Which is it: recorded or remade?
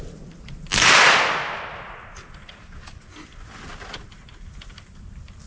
recorded